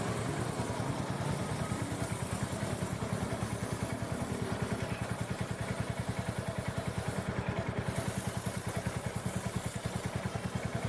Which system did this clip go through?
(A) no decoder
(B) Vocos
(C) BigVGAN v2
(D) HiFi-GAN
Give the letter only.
A